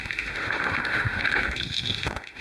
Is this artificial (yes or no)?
yes